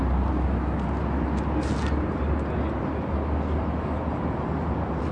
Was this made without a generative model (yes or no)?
yes